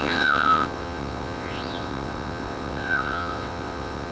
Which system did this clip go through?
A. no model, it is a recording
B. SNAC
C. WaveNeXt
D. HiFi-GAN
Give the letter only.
C